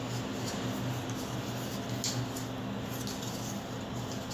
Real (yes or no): yes